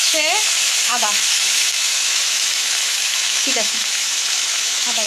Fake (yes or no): yes